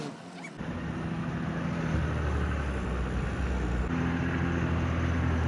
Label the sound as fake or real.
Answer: real